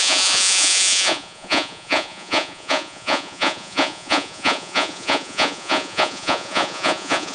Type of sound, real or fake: fake